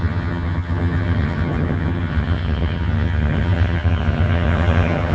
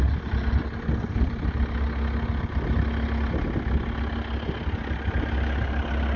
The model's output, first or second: first